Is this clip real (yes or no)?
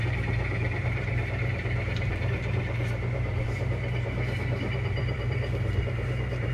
no